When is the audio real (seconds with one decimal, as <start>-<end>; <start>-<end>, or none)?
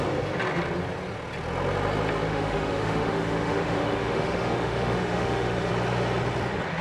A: 0.0-2.3; 5.7-6.8